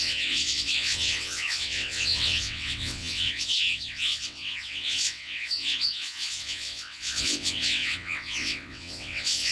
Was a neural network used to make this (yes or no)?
yes